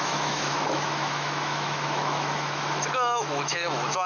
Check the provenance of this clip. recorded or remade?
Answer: remade